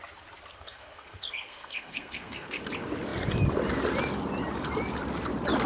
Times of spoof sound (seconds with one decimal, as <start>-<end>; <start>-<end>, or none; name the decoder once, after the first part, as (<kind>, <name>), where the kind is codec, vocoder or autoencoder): 0.5-2.6 (codec, SNAC)